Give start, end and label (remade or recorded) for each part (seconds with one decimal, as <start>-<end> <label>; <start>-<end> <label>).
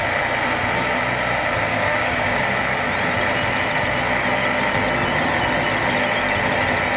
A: 0.0-1.7 recorded; 1.7-2.4 remade; 2.4-7.0 recorded